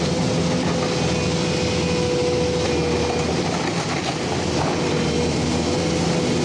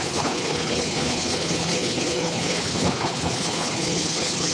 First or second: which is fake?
second